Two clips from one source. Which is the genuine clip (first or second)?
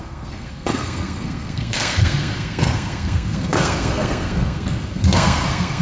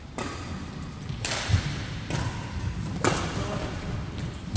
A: second